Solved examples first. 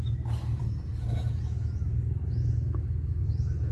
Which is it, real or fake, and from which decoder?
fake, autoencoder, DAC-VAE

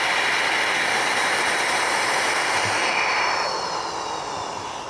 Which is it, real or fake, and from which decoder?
real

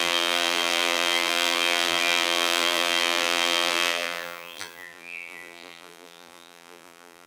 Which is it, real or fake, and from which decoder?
fake, vocoder, BigVGAN v2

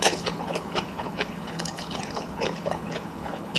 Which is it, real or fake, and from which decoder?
fake, codec, HILCodec